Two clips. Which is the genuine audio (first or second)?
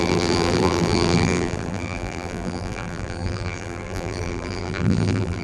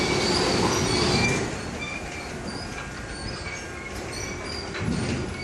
second